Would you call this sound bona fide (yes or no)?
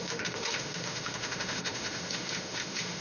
no